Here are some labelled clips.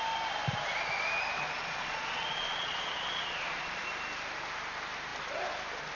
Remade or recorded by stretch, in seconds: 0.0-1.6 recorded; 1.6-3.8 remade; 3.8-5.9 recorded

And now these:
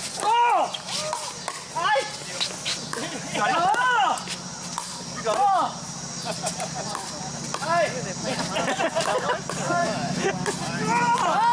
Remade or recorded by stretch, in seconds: 0.0-9.8 recorded; 9.8-10.3 remade; 10.3-11.5 recorded

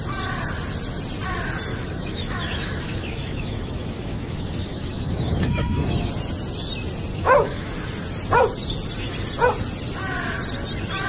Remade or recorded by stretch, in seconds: 0.0-1.7 recorded; 1.7-6.1 remade; 6.1-7.1 recorded; 7.1-7.7 remade; 7.7-11.1 recorded

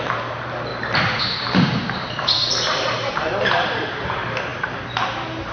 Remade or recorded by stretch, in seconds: 0.0-5.5 remade